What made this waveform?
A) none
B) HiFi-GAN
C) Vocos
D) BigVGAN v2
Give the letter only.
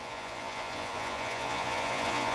C